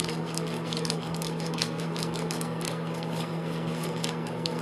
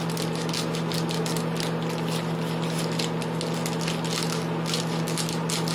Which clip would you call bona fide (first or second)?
second